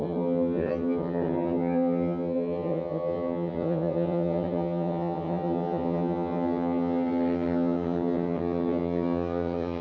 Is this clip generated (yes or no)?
yes